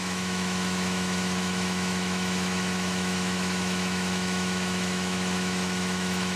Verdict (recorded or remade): remade